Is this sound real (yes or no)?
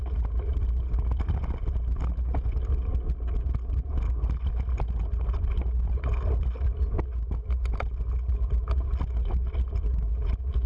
yes